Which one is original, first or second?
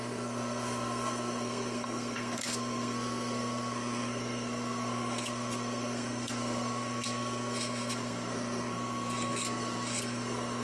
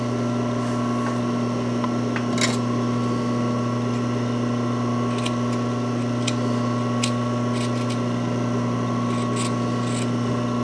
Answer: second